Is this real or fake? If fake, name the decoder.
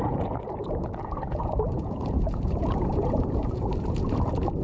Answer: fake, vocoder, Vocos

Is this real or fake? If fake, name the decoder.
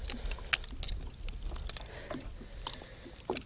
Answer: real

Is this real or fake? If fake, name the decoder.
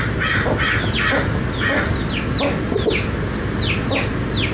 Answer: real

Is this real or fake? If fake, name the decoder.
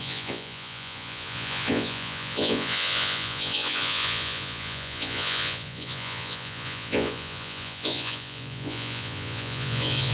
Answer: fake, vocoder, Vocos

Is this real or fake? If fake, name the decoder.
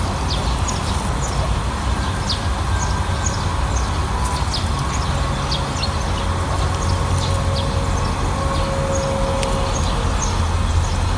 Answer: real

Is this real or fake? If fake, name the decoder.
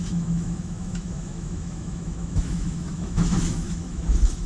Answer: fake, autoencoder, DAC-VAE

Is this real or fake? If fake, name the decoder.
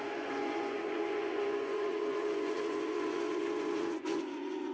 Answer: fake, vocoder, Vocos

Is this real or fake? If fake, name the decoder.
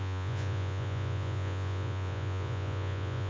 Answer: fake, vocoder, Vocos